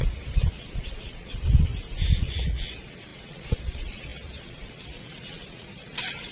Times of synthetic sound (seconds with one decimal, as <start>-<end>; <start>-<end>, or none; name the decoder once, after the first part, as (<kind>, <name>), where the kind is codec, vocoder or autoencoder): 0.0-1.7 (vocoder, WaveNeXt); 2.2-6.3